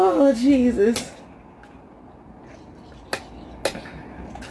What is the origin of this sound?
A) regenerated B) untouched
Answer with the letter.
B